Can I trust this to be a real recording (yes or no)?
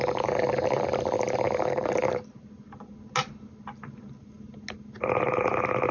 yes